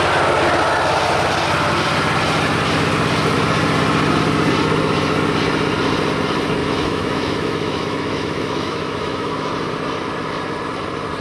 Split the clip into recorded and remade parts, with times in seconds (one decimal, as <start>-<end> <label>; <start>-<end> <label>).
0.0-6.6 recorded; 6.6-9.5 remade; 9.5-11.2 recorded